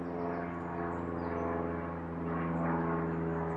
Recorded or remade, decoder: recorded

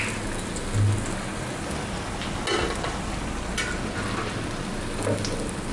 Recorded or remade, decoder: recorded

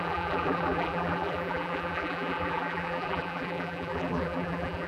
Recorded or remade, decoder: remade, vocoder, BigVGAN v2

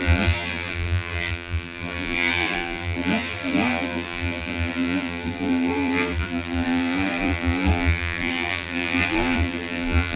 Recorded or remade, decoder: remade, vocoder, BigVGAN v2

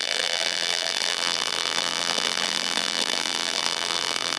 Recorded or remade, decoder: remade, vocoder, BigVGAN v2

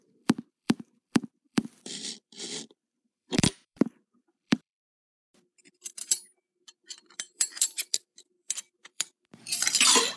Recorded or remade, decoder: remade, vocoder, BigVGAN v2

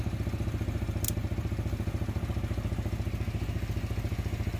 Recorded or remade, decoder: recorded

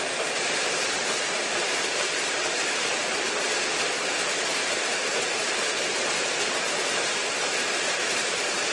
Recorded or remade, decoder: remade, vocoder, BigVGAN v2